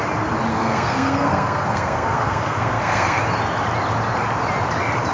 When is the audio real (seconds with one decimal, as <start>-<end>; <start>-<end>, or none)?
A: 0.0-0.5; 3.2-5.1

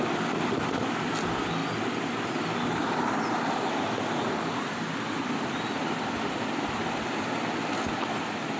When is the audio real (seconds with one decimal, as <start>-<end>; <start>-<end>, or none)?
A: 0.0-8.6

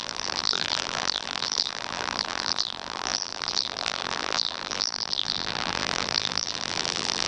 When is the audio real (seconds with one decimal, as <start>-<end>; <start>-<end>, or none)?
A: none